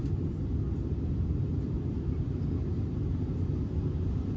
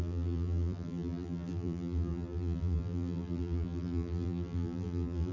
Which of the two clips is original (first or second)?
first